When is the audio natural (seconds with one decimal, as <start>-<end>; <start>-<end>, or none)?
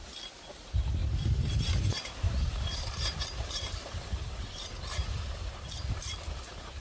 0.0-1.0; 5.1-6.8